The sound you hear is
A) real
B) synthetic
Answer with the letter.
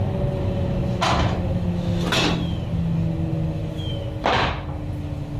A